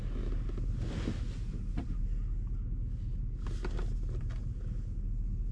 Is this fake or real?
real